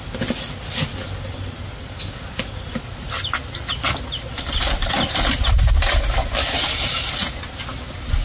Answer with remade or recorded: recorded